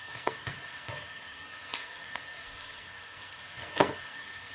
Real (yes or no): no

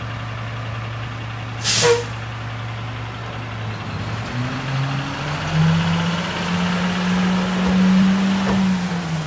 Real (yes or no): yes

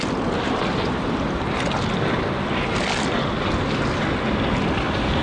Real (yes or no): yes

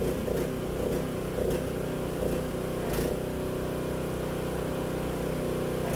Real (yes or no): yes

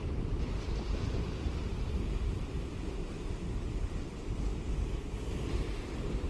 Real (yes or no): yes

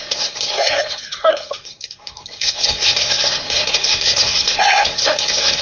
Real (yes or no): no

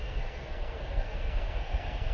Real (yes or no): no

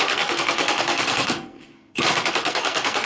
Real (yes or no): no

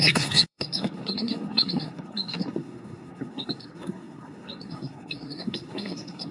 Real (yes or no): no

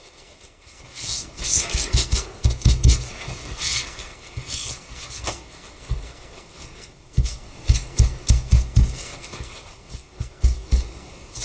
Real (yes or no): no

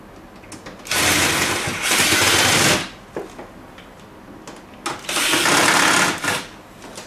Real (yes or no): yes